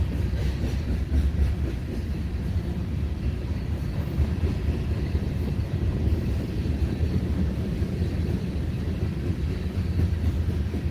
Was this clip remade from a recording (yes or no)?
yes